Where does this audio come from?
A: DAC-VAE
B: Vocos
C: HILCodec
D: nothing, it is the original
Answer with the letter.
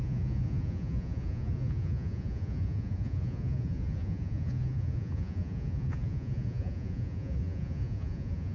B